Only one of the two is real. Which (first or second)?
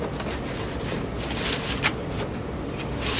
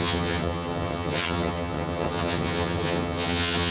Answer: first